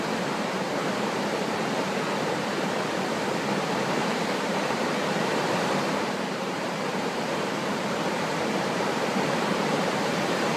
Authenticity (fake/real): fake